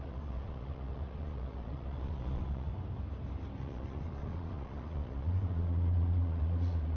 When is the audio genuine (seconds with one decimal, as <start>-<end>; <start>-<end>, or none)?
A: 2.7-3.6